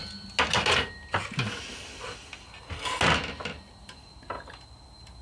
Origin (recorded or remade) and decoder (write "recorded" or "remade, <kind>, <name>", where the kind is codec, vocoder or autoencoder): recorded